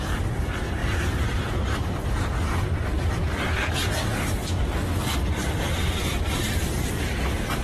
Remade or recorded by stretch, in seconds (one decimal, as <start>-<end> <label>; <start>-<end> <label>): 0.0-4.4 remade; 4.4-7.6 recorded